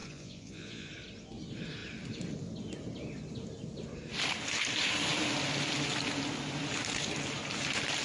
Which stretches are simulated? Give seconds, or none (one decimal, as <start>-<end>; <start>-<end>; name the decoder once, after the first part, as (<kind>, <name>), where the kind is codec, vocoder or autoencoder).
0.0-0.9 (vocoder, Vocos)